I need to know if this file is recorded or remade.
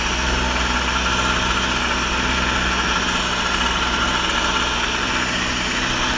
recorded